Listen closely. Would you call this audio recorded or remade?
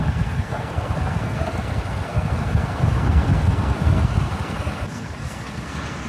remade